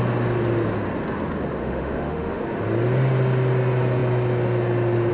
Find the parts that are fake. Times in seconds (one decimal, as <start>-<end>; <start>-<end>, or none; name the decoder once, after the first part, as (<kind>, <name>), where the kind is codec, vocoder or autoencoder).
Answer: 1.6-2.4 (autoencoder, DAC-VAE)